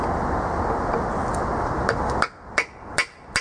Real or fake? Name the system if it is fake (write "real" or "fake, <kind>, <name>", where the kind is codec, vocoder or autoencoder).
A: real